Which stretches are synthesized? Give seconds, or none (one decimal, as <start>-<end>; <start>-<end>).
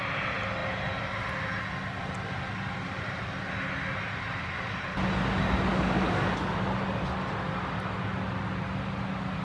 5.7-6.3